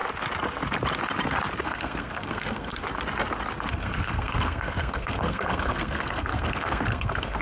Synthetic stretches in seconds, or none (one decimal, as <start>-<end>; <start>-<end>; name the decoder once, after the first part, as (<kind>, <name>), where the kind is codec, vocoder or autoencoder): 1.6-2.8 (codec, SNAC); 3.7-7.4

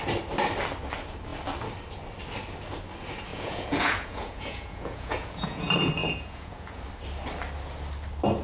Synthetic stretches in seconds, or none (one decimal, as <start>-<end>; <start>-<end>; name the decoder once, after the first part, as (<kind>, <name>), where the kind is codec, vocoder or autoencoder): 3.3-5.6 (vocoder, Vocos); 6.0-6.8

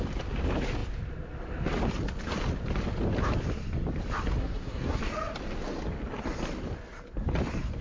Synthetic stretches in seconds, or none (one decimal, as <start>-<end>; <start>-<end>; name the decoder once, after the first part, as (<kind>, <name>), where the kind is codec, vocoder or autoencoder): 4.4-5.0 (codec, SNAC)

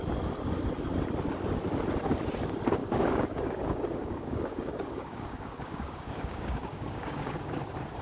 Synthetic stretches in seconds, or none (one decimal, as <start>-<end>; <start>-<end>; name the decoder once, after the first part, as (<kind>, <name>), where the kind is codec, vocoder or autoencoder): 2.8-7.6 (codec, DAC)

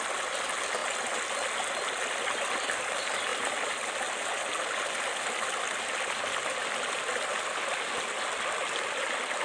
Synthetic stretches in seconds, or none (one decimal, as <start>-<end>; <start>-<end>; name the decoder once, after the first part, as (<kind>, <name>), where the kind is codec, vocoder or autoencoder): none